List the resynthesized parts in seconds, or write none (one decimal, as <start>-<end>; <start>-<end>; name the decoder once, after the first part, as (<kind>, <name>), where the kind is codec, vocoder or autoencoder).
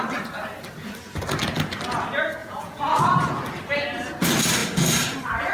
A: 2.4-3.4 (vocoder, Vocos)